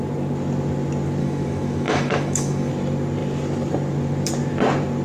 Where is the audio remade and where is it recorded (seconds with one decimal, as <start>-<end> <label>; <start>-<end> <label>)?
0.0-1.2 recorded; 1.2-2.7 remade; 2.7-5.0 recorded